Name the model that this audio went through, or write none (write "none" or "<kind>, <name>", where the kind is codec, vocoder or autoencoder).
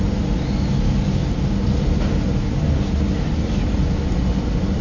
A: none